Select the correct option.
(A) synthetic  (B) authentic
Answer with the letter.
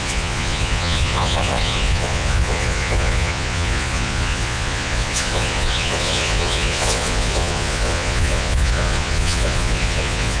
A